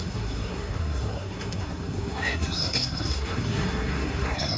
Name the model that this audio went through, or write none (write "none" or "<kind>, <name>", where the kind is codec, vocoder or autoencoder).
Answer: codec, SNAC